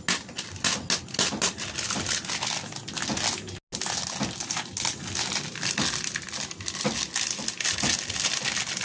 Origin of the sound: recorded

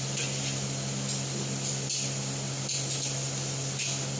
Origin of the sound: recorded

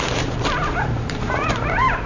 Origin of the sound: remade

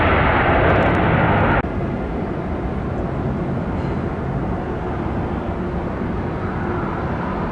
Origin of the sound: recorded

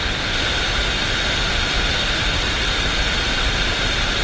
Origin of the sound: recorded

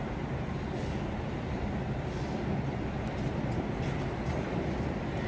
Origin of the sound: recorded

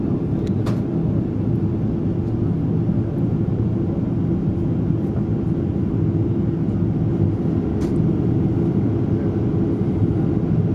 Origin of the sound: recorded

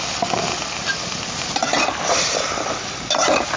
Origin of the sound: recorded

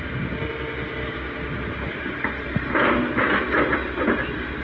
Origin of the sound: recorded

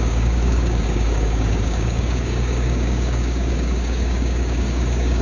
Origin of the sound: remade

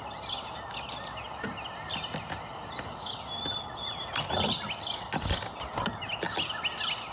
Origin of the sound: recorded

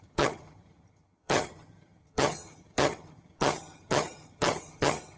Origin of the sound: remade